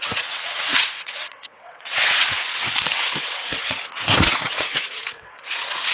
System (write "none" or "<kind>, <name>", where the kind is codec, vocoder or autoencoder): vocoder, WaveNeXt